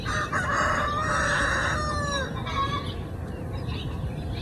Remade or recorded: recorded